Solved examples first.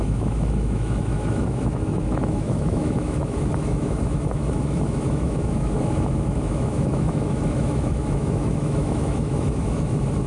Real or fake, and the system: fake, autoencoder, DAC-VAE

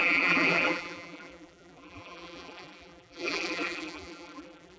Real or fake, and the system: fake, vocoder, BigVGAN v2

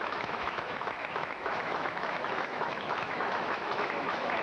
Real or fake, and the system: fake, autoencoder, DAC-VAE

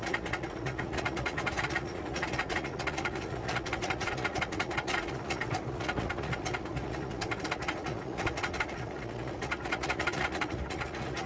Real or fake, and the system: fake, vocoder, Vocos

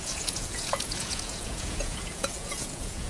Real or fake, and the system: fake, vocoder, Vocos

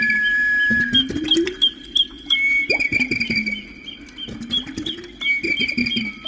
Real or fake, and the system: real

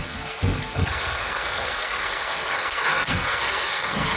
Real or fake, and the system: fake, codec, SNAC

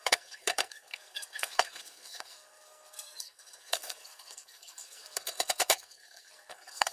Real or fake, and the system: fake, codec, SNAC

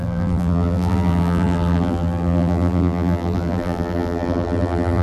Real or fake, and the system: fake, vocoder, BigVGAN v2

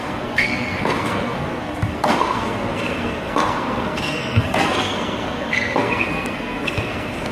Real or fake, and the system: fake, codec, SNAC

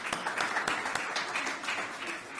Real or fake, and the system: real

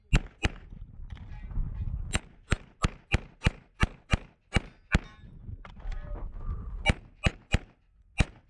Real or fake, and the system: real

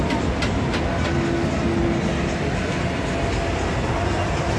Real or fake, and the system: real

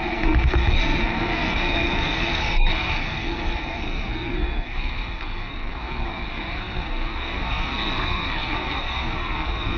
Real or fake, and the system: fake, codec, SNAC